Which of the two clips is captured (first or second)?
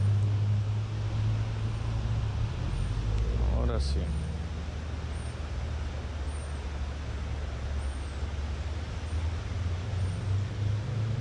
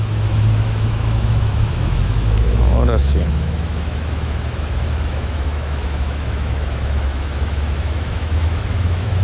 first